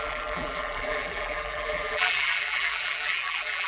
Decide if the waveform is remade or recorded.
remade